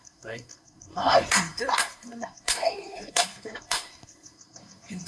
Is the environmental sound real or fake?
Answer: fake